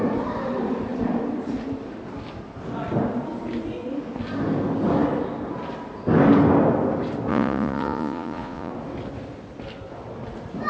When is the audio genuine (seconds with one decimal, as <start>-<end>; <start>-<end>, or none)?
0.0-7.3; 8.7-10.7